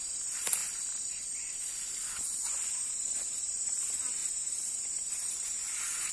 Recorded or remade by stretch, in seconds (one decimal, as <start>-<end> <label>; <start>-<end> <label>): 0.0-4.2 recorded; 4.2-6.1 remade